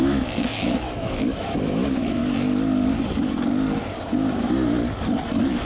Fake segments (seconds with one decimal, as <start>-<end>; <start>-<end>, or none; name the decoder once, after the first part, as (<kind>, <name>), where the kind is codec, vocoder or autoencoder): 0.0-2.2 (autoencoder, DAC-VAE)